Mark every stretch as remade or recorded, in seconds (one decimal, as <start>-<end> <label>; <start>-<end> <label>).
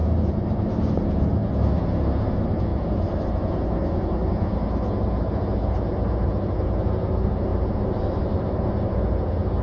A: 0.0-0.9 remade; 0.9-2.7 recorded; 2.7-3.3 remade; 3.3-7.5 recorded; 7.5-8.6 remade; 8.6-9.6 recorded